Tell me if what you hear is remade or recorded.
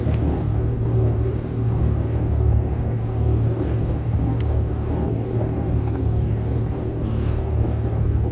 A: remade